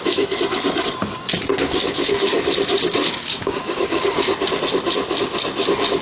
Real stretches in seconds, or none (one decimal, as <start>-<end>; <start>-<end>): 0.0-1.5; 2.3-3.0; 4.6-6.0